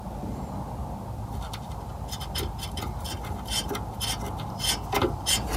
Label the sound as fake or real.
real